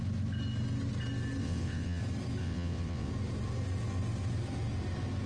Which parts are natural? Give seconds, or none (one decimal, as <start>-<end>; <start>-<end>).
0.0-1.4; 2.0-2.4; 3.1-5.3